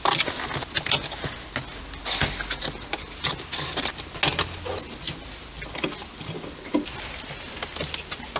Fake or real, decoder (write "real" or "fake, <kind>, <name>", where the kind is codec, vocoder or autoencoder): real